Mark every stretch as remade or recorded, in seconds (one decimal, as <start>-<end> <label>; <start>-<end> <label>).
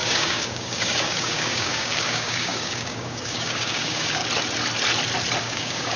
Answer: 0.0-4.2 remade; 4.2-5.4 recorded; 5.4-6.0 remade